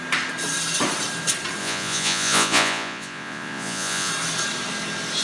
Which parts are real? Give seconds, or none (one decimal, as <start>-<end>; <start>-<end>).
0.0-1.6; 4.1-5.2